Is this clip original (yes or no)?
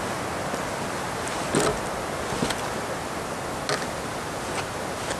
yes